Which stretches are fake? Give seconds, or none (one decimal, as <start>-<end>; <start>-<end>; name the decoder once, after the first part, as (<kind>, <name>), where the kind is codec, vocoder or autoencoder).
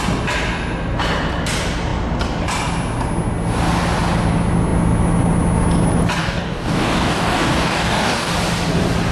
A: 6.2-8.3 (codec, DAC)